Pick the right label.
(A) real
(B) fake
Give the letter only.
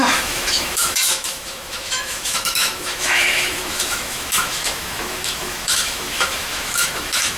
B